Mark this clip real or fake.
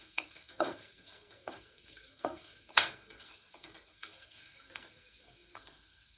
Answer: fake